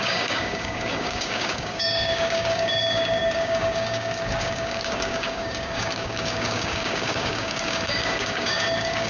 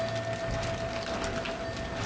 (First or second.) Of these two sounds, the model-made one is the first